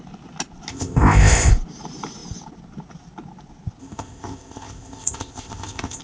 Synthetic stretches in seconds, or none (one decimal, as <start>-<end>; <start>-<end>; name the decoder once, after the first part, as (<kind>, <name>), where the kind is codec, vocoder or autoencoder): 0.7-1.5 (codec, ZipCodec); 3.8-6.0